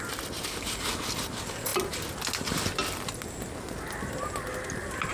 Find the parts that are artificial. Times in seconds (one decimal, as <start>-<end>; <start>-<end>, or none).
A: none